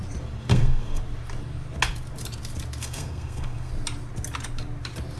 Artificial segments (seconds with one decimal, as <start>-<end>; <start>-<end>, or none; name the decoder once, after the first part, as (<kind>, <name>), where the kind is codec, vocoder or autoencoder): 0.5-1.0 (codec, SNAC); 2.8-3.7

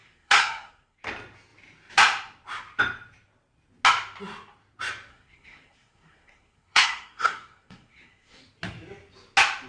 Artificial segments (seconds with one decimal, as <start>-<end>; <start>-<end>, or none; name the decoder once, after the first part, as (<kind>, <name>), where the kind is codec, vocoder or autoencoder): 0.0-1.0 (codec, SNAC); 5.1-8.4

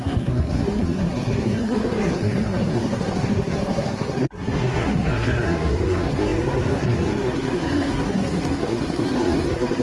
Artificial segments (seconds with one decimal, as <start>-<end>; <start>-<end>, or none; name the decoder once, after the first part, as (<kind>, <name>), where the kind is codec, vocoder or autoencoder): 0.0-9.8 (codec, SNAC)

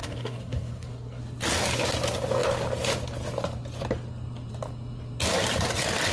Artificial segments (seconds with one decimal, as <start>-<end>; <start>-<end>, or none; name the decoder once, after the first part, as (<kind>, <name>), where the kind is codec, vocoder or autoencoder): 0.0-1.2 (codec, SNAC)